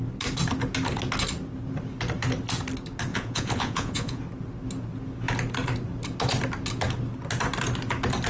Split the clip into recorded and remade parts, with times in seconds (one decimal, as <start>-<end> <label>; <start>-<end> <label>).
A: 0.0-3.1 recorded; 3.1-4.2 remade; 4.2-8.3 recorded